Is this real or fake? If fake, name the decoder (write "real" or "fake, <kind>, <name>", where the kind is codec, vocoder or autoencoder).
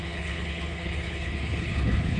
fake, codec, HILCodec